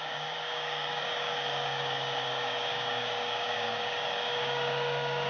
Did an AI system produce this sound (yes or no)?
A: yes